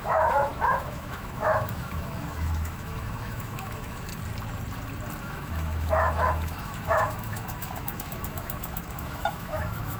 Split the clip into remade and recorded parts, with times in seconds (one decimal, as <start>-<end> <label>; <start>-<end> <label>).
0.0-4.1 remade; 4.1-5.2 recorded; 5.2-10.0 remade